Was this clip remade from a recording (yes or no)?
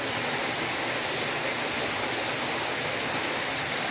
no